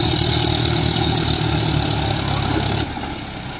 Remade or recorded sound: recorded